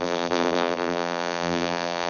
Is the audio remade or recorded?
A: remade